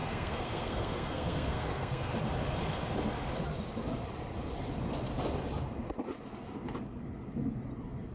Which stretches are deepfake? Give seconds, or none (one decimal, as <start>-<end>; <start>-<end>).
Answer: 0.0-2.1